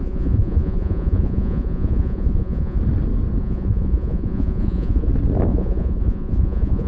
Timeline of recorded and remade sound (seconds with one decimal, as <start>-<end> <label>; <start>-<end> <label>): 0.0-2.8 remade; 2.8-3.4 recorded; 3.4-5.1 remade; 5.1-5.5 recorded; 5.5-6.9 remade